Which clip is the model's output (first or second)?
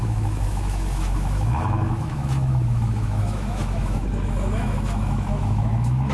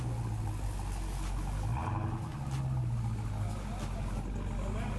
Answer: first